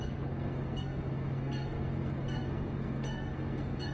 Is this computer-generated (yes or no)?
yes